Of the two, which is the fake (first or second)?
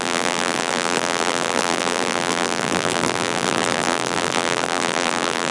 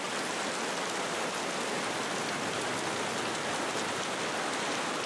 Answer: first